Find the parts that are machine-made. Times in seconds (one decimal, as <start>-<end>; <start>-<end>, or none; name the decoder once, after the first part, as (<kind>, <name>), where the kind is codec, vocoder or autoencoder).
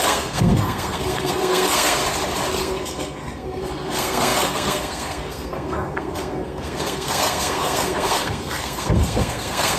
0.0-2.0 (codec, SNAC); 2.6-9.8